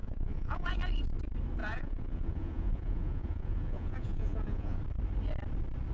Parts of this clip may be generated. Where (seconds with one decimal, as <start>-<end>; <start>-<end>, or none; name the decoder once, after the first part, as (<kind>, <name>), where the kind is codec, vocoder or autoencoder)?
0.0-0.8 (vocoder, Vocos); 1.6-4.8